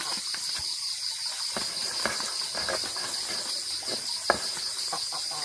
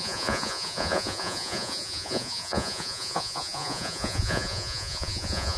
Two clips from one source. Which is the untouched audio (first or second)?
first